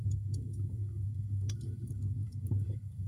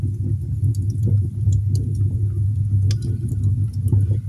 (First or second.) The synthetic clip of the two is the first